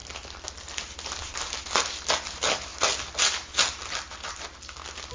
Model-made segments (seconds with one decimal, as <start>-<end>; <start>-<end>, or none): none